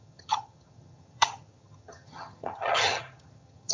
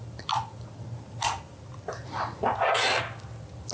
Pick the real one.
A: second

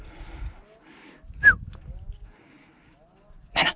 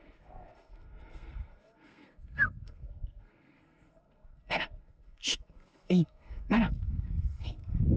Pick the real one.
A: first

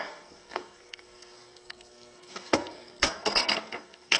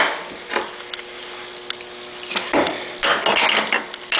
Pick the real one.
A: second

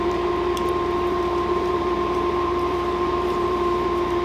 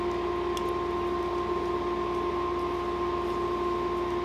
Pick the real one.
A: second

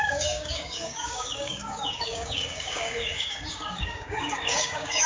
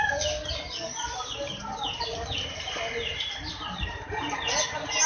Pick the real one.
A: second